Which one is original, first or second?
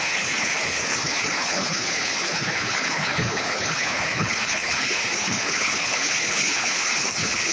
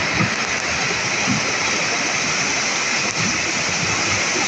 second